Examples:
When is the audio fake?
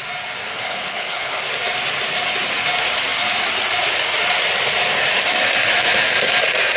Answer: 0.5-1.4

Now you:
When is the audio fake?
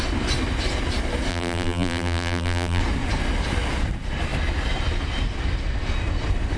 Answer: 1.3-2.8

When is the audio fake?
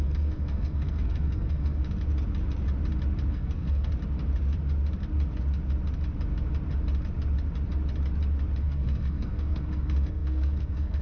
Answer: 0.0-1.8; 3.3-3.9; 8.6-11.0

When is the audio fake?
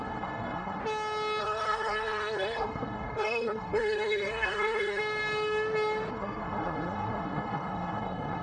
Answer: 0.0-0.8; 1.4-5.0; 6.1-8.4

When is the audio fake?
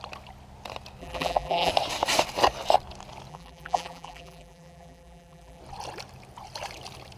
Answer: 1.0-1.7; 3.3-5.6